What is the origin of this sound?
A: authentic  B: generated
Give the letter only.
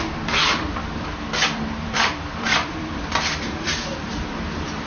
B